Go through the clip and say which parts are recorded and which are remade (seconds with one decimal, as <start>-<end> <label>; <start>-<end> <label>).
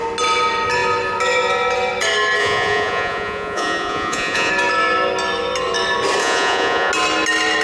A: 0.0-2.4 recorded; 2.4-4.5 remade; 4.5-6.2 recorded; 6.2-6.9 remade; 6.9-7.6 recorded